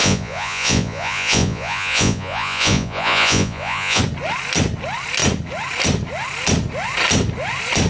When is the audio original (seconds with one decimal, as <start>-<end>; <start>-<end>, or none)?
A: 4.0-7.9